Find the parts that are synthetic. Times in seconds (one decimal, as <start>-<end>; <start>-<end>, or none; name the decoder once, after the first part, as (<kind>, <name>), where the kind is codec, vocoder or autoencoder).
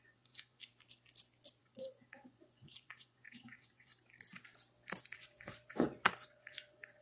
0.0-0.7 (vocoder, Vocos); 1.6-3.9; 5.0-7.0